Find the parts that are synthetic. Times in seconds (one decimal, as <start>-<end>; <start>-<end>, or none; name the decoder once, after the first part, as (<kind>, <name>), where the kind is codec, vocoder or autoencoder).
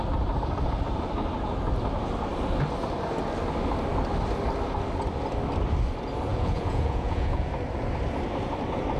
6.3-7.5 (vocoder, Vocos)